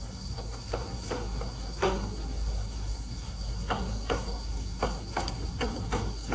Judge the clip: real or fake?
fake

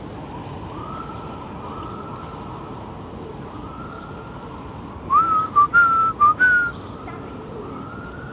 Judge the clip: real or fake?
real